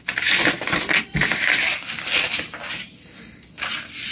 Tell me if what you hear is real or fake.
real